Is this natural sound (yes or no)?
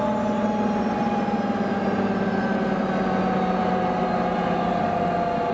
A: yes